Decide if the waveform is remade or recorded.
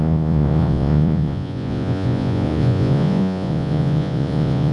remade